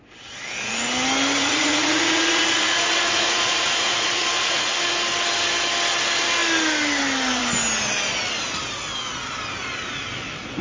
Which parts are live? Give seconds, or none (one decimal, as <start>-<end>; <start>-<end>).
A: 0.0-1.4; 4.7-10.6